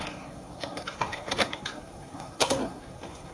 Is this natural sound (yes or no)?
no